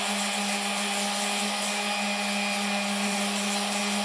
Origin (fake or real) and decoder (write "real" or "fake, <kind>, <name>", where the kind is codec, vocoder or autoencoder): real